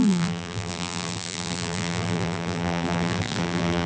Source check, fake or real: fake